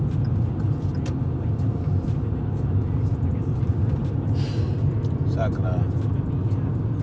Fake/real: real